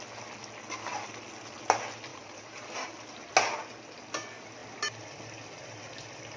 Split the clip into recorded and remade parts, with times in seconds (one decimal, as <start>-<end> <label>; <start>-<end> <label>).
0.0-2.1 recorded; 2.1-2.9 remade; 2.9-6.4 recorded